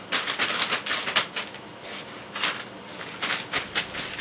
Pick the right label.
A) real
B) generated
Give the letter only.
A